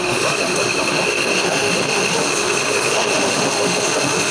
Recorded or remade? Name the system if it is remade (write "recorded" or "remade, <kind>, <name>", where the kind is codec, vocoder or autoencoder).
remade, autoencoder, DAC-VAE